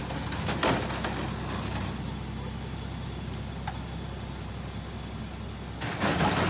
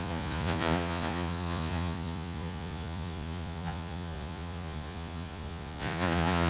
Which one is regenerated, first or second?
second